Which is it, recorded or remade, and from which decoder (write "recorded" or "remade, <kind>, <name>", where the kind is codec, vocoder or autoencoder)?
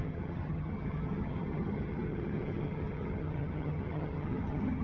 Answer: remade, vocoder, HiFi-GAN